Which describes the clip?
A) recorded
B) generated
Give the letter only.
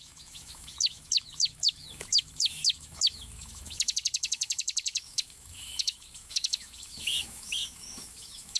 B